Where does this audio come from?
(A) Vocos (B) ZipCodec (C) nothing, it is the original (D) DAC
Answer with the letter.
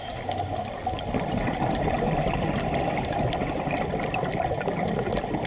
C